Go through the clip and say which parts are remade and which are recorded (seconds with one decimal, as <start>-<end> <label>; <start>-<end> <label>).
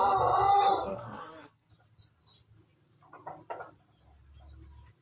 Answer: 0.0-0.9 recorded; 0.9-1.7 remade; 1.7-5.0 recorded